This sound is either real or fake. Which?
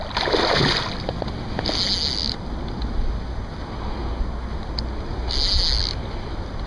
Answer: real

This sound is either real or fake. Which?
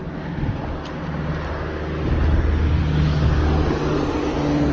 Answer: real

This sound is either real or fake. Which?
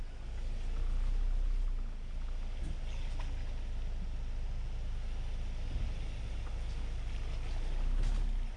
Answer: real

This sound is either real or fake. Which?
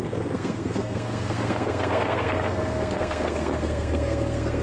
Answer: fake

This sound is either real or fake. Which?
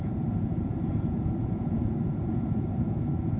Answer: fake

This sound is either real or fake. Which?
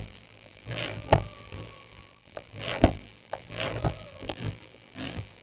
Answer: fake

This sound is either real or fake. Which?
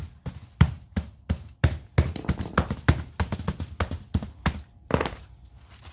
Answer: real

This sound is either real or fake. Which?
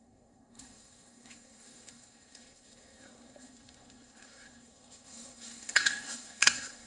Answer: fake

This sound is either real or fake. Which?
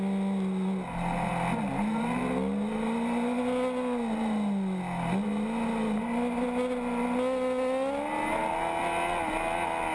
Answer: real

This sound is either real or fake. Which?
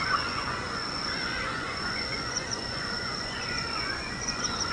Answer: fake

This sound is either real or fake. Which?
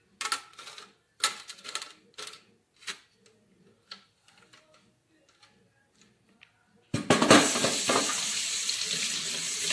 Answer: real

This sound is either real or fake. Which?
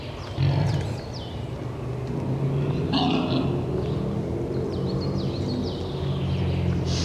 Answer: real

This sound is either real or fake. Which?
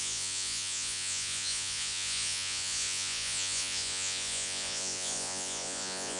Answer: fake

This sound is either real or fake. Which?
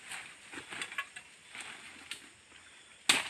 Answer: real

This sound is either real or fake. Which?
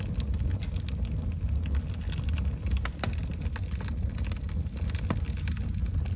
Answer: real